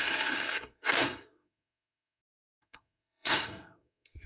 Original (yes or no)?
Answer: no